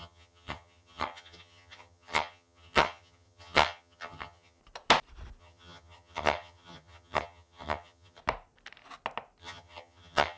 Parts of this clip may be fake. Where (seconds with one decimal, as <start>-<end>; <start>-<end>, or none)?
0.0-4.6; 5.4-8.2; 9.4-10.4